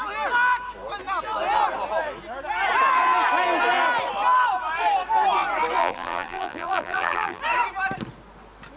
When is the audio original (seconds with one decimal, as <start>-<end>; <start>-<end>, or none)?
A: 0.0-5.8; 7.4-8.8